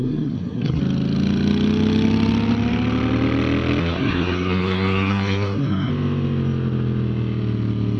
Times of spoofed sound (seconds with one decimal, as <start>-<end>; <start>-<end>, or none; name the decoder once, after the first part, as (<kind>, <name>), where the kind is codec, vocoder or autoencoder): 0.0-0.8 (codec, SNAC); 3.8-5.9